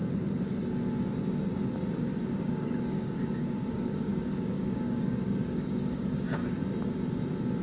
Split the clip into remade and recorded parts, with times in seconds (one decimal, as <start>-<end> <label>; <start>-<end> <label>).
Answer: 0.0-2.0 recorded; 2.0-6.4 remade; 6.4-7.6 recorded